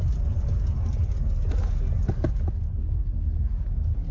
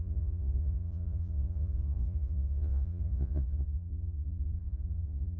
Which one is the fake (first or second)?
second